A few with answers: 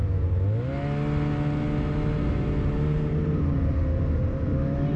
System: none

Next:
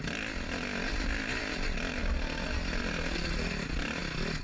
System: none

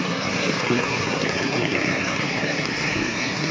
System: codec, SNAC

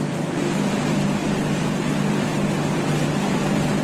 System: none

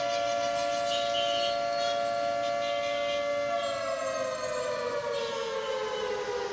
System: none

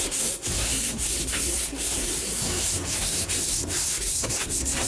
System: codec, SNAC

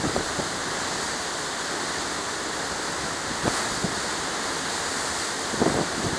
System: none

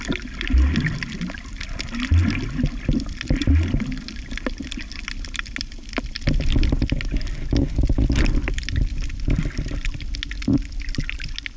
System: none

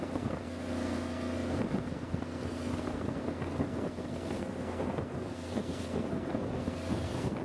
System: codec, SNAC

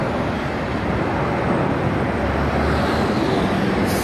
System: none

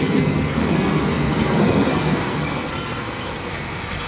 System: codec, SNAC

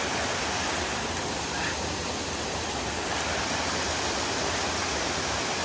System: none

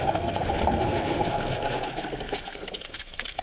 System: codec, SNAC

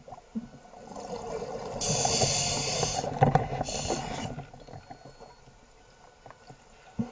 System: none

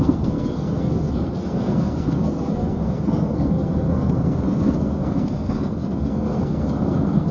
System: codec, SNAC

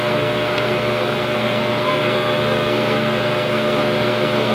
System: codec, SNAC